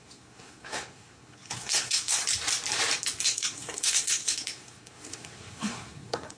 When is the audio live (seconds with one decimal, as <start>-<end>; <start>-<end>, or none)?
2.2-3.2